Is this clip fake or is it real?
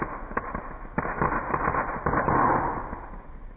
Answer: real